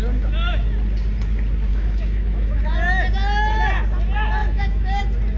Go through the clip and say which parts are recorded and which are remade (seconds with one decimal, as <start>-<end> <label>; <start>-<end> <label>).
0.0-1.7 recorded; 1.7-2.6 remade; 2.6-4.4 recorded; 4.4-5.0 remade; 5.0-5.4 recorded